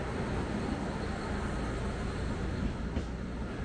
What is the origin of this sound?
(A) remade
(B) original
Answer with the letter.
B